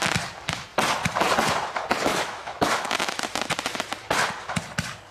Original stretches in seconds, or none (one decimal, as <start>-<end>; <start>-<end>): 0.0-2.1; 3.2-5.1